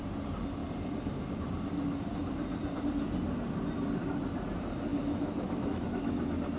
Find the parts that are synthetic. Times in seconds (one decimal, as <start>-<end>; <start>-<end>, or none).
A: 4.9-6.0